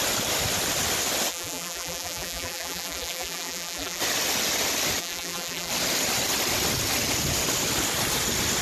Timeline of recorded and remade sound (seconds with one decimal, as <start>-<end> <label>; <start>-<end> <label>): 0.0-1.3 recorded; 1.3-4.0 remade; 4.0-5.0 recorded; 5.0-5.7 remade; 5.7-8.6 recorded

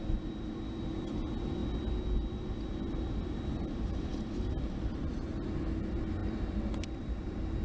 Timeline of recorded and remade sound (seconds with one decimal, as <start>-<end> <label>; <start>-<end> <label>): 0.0-1.6 remade; 1.6-2.5 recorded; 2.5-6.2 remade; 6.2-7.0 recorded; 7.0-7.6 remade

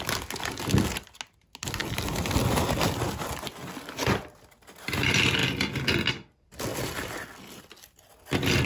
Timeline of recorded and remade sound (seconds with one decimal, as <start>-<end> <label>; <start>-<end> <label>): 0.0-8.7 recorded

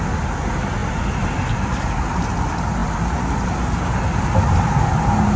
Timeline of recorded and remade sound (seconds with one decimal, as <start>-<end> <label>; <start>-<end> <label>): 0.0-0.8 recorded; 0.8-1.8 remade; 1.8-5.4 recorded

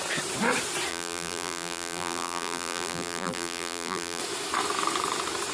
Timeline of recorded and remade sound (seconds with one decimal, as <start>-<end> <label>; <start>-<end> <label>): 0.0-0.9 recorded; 0.9-4.2 remade; 4.2-5.5 recorded